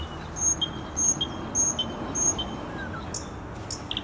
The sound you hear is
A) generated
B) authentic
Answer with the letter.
B